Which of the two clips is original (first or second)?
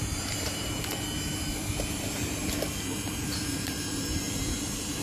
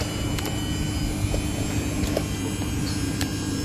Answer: second